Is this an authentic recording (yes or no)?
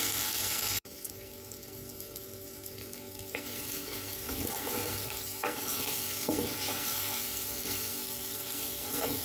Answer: no